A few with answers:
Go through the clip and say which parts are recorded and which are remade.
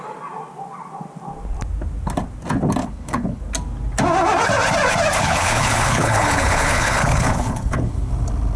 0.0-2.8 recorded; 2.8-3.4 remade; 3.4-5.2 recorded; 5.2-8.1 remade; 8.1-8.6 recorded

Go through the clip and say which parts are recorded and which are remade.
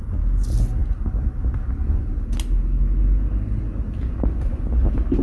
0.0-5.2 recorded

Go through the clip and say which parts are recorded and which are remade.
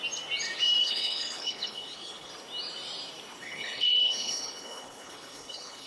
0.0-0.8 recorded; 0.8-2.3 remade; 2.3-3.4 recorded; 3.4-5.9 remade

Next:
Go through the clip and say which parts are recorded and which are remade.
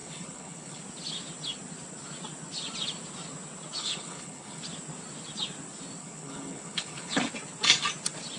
0.0-0.8 remade; 0.8-3.8 recorded; 3.8-4.6 remade; 4.6-6.0 recorded; 6.0-7.2 remade; 7.2-8.4 recorded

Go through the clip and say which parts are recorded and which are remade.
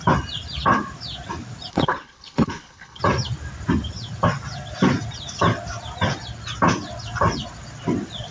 0.0-1.7 recorded; 1.7-3.0 remade; 3.0-8.3 recorded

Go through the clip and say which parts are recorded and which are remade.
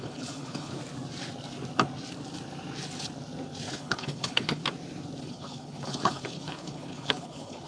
0.0-0.8 remade; 0.8-3.7 recorded; 3.7-4.6 remade; 4.6-5.2 recorded; 5.2-7.7 remade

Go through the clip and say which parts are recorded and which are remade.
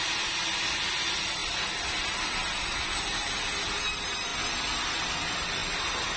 0.0-6.2 recorded